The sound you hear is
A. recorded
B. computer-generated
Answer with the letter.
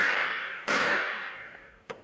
B